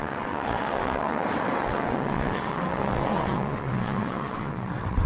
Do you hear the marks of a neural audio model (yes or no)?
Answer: yes